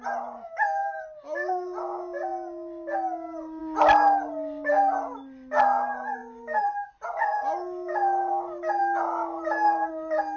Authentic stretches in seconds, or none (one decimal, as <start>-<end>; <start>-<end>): 0.0-10.4